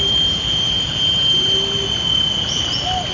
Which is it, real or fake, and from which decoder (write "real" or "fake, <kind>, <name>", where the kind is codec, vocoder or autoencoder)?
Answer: real